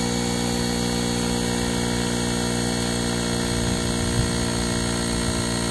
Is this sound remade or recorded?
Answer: recorded